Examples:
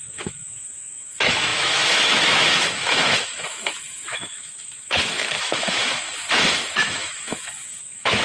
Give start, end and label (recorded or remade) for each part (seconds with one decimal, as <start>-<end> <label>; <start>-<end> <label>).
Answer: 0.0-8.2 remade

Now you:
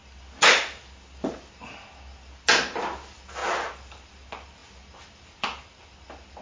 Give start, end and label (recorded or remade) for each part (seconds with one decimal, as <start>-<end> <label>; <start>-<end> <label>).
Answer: 0.0-6.4 recorded

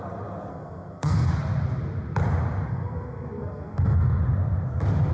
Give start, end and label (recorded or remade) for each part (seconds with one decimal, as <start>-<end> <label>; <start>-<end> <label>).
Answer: 0.0-0.5 recorded; 0.5-1.3 remade; 1.3-2.7 recorded; 2.7-4.2 remade; 4.2-5.1 recorded